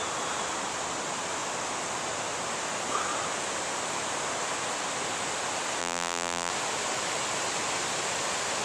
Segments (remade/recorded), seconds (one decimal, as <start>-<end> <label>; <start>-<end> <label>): 0.0-5.8 recorded; 5.8-6.5 remade; 6.5-8.6 recorded

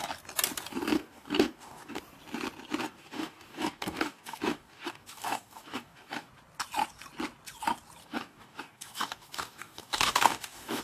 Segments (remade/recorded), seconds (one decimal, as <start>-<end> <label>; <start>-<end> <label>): 0.0-0.9 recorded; 0.9-2.0 remade; 2.0-2.8 recorded; 2.8-6.3 remade; 6.3-8.0 recorded; 8.0-10.8 remade